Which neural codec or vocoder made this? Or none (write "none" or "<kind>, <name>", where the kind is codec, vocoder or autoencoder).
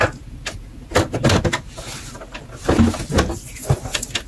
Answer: none